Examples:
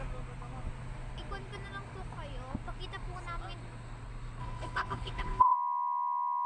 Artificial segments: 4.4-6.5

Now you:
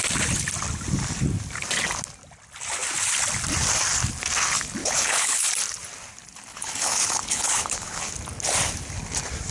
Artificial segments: 4.8-5.5; 6.5-8.1

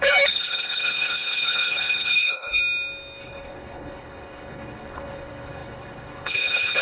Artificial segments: 0.0-2.6; 3.2-6.8

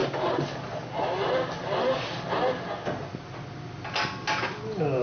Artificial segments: none